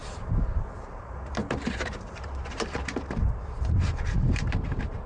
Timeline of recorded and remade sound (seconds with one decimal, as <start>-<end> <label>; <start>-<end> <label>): 0.0-5.1 remade